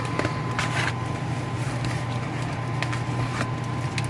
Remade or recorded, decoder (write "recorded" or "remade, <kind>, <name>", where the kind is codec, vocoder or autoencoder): recorded